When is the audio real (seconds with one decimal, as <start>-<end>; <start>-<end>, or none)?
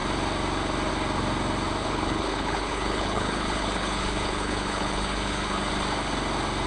0.0-1.8; 5.7-6.7